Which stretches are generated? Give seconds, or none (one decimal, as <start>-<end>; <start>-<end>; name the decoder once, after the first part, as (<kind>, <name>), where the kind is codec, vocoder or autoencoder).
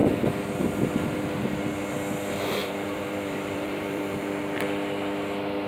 2.6-4.4 (vocoder, BigVGAN v2)